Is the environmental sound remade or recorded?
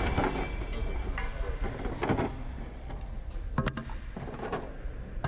recorded